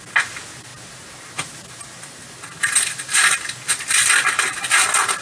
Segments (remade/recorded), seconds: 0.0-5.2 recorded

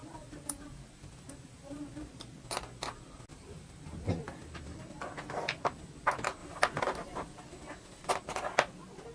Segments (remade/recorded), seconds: 0.0-2.1 remade; 2.1-3.3 recorded; 3.3-4.5 remade; 4.5-9.1 recorded

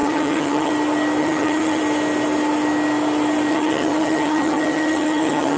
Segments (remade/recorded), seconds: 0.0-0.7 remade; 0.7-1.2 recorded; 1.2-1.8 remade; 1.8-3.5 recorded; 3.5-5.6 remade

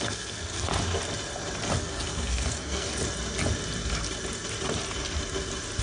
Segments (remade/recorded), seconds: 0.0-0.7 remade; 0.7-1.8 recorded; 1.8-2.9 remade; 2.9-5.8 recorded